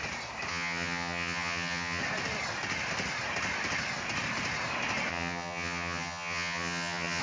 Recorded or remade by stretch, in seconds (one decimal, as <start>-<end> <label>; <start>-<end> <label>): 0.0-0.5 recorded; 0.5-2.0 remade; 2.0-5.1 recorded; 5.1-7.2 remade